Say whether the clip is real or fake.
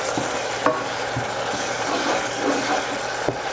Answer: real